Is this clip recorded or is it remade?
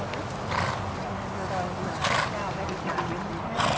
recorded